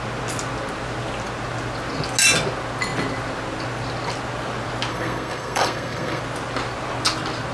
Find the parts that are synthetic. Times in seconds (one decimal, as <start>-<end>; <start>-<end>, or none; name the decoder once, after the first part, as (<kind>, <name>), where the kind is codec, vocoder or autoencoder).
4.9-6.2 (codec, SNAC)